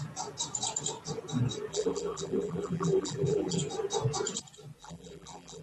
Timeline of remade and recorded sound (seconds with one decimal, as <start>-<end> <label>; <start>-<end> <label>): 0.0-1.7 recorded; 1.7-3.6 remade; 3.6-4.8 recorded; 4.8-5.6 remade